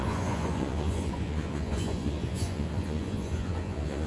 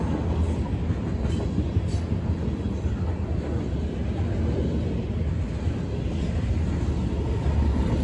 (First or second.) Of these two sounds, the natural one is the second